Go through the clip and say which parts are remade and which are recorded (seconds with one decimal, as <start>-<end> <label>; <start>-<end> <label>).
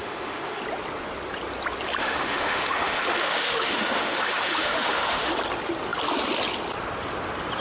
0.0-0.6 remade; 0.6-2.0 recorded; 2.0-5.3 remade; 5.3-7.6 recorded